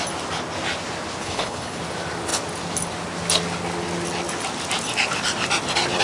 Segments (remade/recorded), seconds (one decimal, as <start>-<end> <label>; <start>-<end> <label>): 0.0-1.2 recorded; 1.2-1.8 remade; 1.8-6.0 recorded